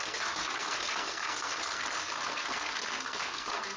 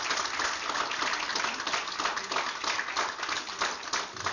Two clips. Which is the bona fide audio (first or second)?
second